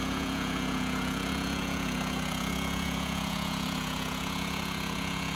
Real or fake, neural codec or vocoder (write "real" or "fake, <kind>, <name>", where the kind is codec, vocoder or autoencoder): fake, vocoder, Vocos